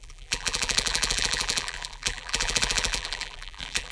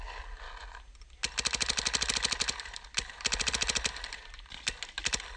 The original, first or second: second